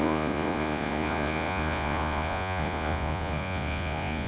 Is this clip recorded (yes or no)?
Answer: no